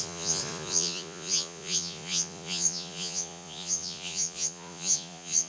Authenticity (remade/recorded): remade